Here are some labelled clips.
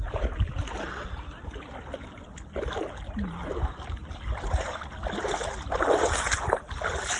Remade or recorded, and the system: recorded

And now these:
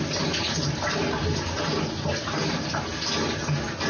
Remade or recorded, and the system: recorded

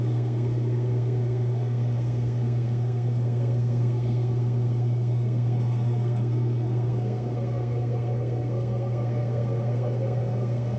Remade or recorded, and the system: remade, codec, SNAC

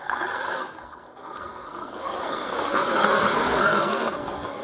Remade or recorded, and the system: remade, codec, SNAC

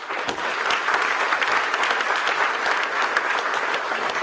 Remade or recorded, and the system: recorded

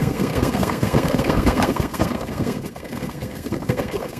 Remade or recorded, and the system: remade, codec, SNAC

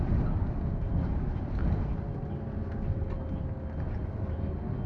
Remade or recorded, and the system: recorded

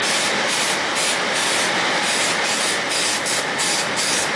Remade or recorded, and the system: recorded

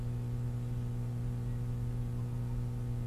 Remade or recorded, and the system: recorded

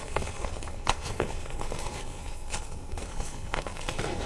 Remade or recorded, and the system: remade, codec, SNAC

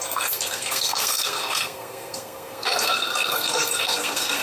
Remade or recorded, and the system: remade, codec, SNAC